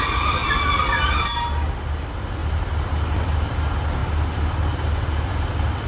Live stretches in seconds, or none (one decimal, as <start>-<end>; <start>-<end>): 0.0-2.4; 3.6-5.9